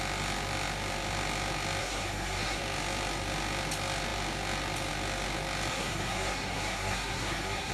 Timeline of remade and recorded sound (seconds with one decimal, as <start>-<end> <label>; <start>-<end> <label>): 0.0-1.8 recorded; 1.8-2.6 remade; 2.6-5.7 recorded; 5.7-7.7 remade